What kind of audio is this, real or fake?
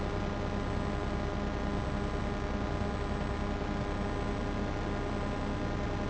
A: real